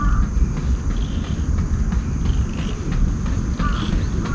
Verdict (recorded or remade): recorded